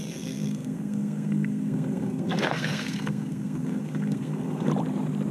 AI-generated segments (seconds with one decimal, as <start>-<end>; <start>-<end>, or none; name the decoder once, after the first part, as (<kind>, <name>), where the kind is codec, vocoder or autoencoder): 0.0-4.7 (codec, SNAC)